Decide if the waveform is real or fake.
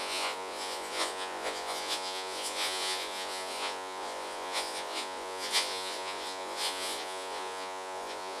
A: fake